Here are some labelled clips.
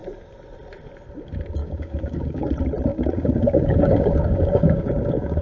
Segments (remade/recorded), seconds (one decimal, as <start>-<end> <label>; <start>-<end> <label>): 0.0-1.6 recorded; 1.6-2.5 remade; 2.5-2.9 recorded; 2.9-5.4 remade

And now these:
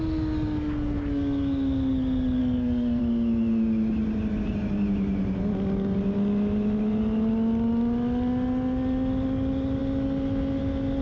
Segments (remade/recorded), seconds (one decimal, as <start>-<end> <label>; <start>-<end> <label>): 0.0-2.4 recorded; 2.4-3.0 remade; 3.0-11.0 recorded

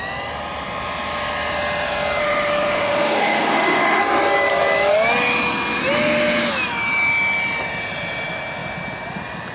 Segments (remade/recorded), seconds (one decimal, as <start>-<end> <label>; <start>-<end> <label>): 0.0-2.2 recorded; 2.2-4.0 remade; 4.0-9.5 recorded

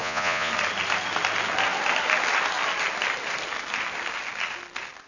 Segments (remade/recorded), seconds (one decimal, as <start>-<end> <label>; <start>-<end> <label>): 0.0-0.5 remade; 0.5-5.1 recorded